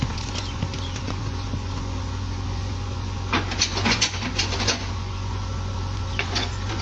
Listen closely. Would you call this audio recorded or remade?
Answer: remade